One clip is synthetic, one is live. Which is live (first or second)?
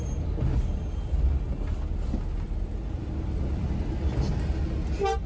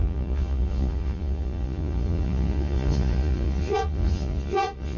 first